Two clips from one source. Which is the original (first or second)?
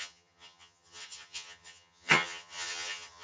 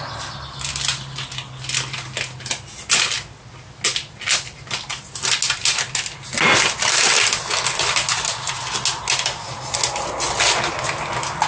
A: second